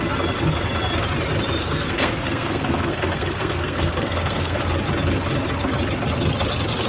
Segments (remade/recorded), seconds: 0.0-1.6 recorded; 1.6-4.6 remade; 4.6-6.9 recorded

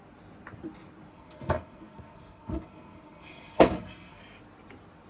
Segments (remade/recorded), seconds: 0.0-1.1 recorded; 1.1-4.2 remade; 4.2-5.1 recorded

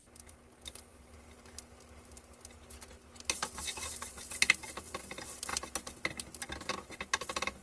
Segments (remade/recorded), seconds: 0.0-7.6 recorded